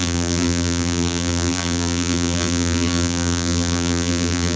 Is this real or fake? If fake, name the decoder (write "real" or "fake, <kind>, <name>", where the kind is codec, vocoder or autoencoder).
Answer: fake, vocoder, BigVGAN v2